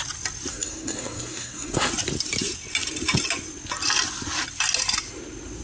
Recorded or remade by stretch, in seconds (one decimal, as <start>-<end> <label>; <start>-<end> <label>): 0.0-0.5 recorded; 0.5-1.9 remade; 1.9-5.6 recorded